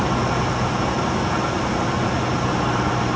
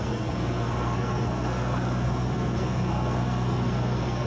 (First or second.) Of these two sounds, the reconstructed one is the second